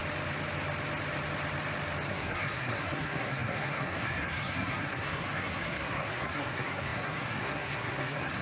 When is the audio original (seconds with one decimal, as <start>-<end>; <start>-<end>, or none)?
0.0-2.1